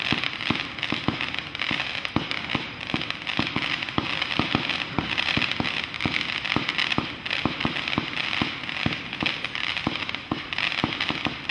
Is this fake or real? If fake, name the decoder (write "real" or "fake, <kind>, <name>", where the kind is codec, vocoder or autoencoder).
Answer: real